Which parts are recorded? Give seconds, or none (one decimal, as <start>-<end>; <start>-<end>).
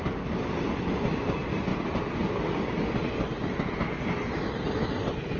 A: 0.0-5.4